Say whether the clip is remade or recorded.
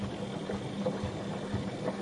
recorded